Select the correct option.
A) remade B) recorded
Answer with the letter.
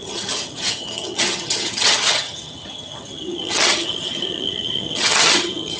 A